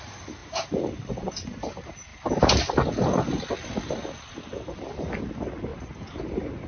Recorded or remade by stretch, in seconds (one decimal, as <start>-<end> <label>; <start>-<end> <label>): 0.0-0.4 recorded; 0.4-1.3 remade; 1.3-5.7 recorded; 5.7-6.7 remade